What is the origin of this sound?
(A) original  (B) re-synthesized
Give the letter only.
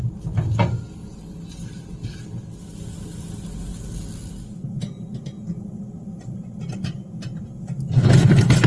A